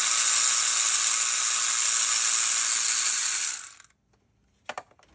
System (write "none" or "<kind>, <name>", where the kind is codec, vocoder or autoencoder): none